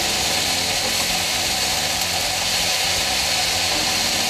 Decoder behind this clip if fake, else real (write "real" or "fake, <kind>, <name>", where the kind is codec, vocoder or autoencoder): real